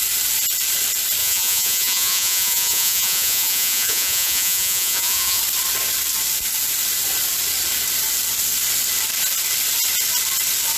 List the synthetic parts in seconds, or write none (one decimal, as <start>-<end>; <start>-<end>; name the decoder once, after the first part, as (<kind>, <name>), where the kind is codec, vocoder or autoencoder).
1.2-5.4 (vocoder, Vocos)